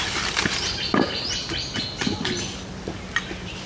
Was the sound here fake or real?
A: real